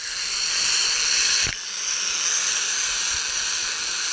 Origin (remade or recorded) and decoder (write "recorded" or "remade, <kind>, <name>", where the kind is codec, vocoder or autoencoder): recorded